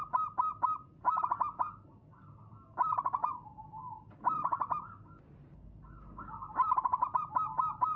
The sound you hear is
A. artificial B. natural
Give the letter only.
B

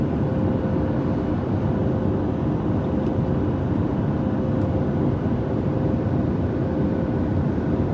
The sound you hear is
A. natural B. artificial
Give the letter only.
A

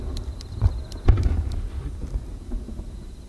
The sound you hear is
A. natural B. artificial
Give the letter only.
A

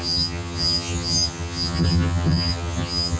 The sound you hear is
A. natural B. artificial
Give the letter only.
B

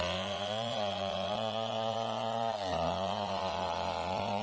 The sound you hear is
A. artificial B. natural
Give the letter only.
A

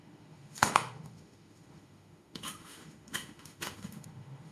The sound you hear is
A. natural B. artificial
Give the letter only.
B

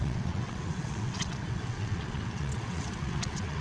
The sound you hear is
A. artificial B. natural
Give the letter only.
A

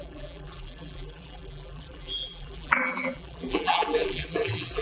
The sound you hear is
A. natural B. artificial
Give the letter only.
B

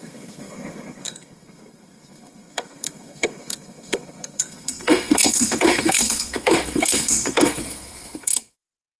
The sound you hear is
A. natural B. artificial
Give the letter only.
B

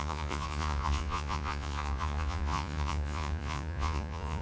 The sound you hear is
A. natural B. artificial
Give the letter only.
B